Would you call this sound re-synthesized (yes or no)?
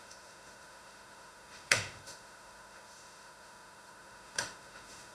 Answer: yes